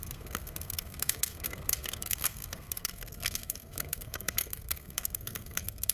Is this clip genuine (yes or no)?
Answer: no